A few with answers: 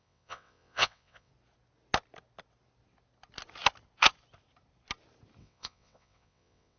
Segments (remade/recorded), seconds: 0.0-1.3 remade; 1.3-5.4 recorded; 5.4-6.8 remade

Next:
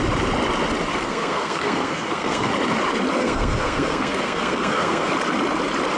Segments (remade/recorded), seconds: 0.0-0.9 recorded; 0.9-2.5 remade; 2.5-3.2 recorded; 3.2-5.1 remade; 5.1-6.0 recorded

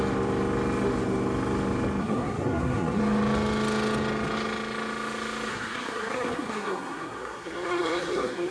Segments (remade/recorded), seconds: 0.0-2.0 recorded; 2.0-3.0 remade; 3.0-5.5 recorded; 5.5-8.5 remade

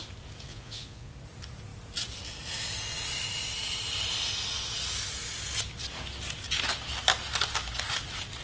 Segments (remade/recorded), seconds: 0.0-0.5 recorded; 0.5-1.1 remade; 1.1-8.4 recorded